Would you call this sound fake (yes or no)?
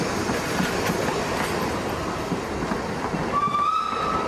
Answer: no